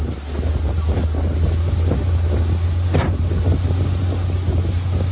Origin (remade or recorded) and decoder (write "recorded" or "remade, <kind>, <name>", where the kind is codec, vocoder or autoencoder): recorded